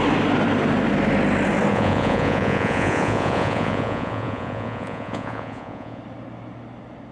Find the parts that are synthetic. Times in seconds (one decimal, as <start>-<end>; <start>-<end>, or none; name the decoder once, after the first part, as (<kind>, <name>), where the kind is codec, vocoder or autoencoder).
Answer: 1.7-6.0 (vocoder, Vocos)